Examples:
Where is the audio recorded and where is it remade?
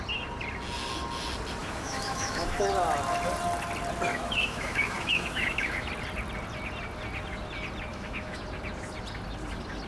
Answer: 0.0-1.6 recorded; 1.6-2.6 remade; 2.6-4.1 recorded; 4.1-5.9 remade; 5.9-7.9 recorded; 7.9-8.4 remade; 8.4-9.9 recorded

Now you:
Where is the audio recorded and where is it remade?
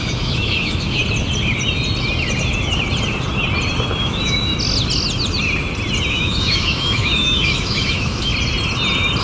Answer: 0.0-1.0 remade; 1.0-4.0 recorded; 4.0-4.5 remade; 4.5-6.1 recorded; 6.1-8.3 remade; 8.3-9.2 recorded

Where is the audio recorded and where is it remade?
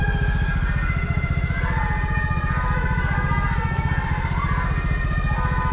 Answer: 0.0-5.7 recorded